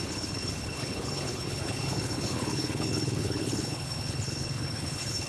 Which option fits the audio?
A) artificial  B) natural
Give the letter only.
A